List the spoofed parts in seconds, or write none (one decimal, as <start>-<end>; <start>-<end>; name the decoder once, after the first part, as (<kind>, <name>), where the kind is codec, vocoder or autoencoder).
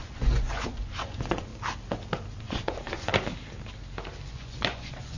0.0-1.5 (vocoder, Vocos); 2.4-3.1; 4.3-5.2